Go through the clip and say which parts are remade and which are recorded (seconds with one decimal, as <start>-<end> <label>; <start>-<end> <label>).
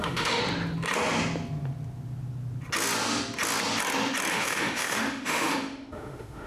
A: 0.0-0.4 remade; 0.4-4.3 recorded; 4.3-6.5 remade